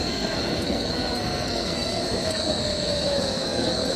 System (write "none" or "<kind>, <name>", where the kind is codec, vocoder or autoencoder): codec, SNAC